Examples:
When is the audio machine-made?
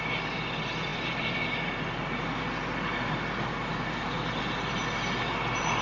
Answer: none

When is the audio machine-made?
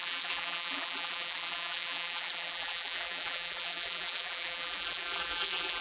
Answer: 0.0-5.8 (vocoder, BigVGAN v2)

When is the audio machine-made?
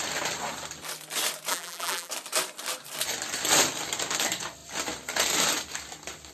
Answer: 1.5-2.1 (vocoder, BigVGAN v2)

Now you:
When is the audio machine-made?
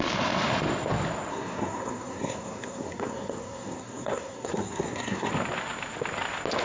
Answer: 1.3-5.3 (codec, SNAC)